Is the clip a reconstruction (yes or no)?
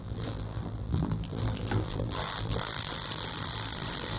yes